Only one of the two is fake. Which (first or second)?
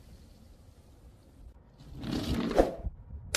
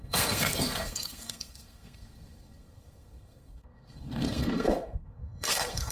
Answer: second